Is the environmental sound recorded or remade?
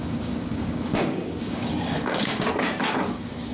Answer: remade